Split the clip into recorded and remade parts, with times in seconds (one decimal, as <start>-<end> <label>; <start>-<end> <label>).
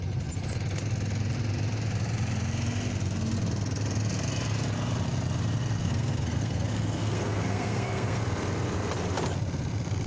0.0-5.8 recorded; 5.8-8.2 remade; 8.2-10.1 recorded